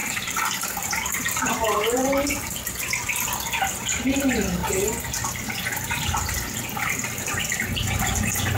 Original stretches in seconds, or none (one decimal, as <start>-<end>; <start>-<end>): 2.7-8.6